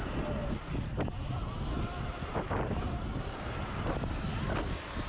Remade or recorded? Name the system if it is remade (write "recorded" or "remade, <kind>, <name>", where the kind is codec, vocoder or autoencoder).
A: recorded